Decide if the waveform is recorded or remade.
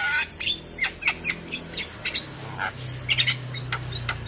recorded